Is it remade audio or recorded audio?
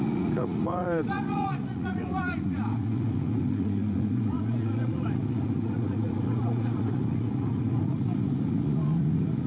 remade